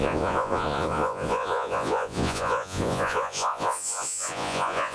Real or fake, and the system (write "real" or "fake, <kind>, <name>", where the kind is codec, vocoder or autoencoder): fake, vocoder, Vocos